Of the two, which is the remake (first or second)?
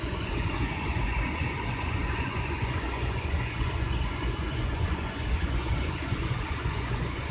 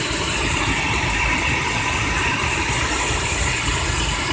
first